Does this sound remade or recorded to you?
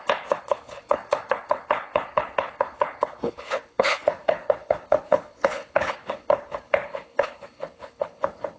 remade